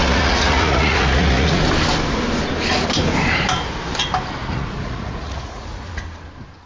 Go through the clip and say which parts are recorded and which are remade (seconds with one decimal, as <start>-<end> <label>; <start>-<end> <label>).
0.0-1.6 remade; 1.6-4.4 recorded; 4.4-6.0 remade; 6.0-6.7 recorded